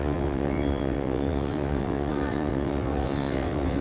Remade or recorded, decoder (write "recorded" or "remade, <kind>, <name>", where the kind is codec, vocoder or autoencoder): remade, vocoder, WaveNeXt